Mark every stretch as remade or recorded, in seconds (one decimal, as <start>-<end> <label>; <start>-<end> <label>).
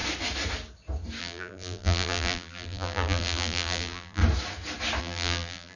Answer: 0.0-1.2 recorded; 1.2-4.2 remade; 4.2-5.0 recorded; 5.0-5.8 remade